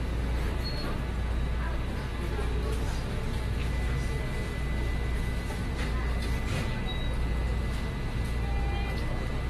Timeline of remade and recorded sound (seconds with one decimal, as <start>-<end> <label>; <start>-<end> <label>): 0.0-9.5 recorded

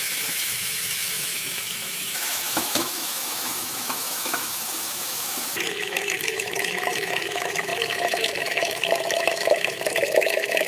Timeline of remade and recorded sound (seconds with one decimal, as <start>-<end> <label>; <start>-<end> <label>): 0.0-10.7 remade

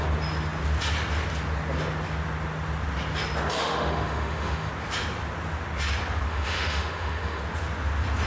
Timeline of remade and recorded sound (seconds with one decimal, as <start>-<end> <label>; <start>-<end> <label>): 0.0-3.6 recorded; 3.6-4.7 remade; 4.7-6.3 recorded; 6.3-7.4 remade; 7.4-8.3 recorded

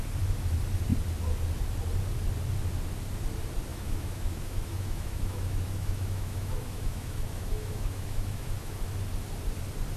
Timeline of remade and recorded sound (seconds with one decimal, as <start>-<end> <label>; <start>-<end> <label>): 0.0-3.7 recorded; 3.7-8.8 remade; 8.8-10.0 recorded